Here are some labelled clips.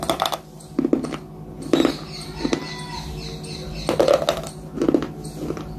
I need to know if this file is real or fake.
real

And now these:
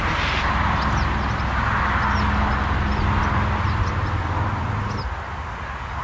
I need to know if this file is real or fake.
real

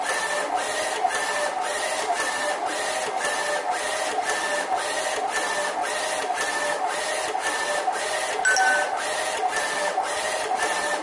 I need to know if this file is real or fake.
real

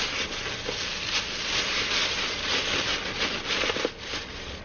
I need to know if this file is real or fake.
real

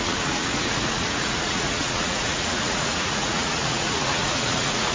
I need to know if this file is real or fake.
fake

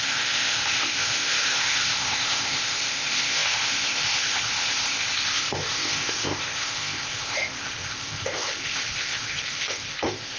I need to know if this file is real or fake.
fake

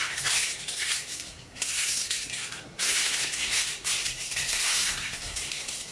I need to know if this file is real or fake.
fake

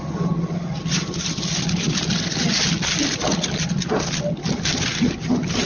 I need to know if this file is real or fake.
real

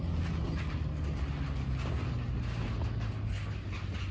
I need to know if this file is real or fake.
real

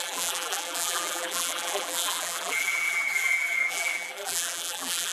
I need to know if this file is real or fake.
fake